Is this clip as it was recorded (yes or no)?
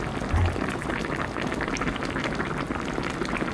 yes